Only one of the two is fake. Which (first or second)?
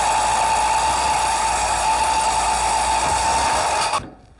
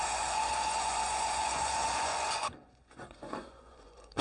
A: second